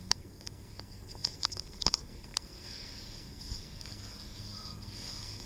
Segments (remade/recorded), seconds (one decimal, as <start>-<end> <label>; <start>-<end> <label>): 0.0-5.5 remade